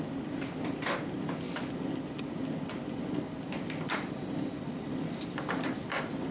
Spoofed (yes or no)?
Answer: no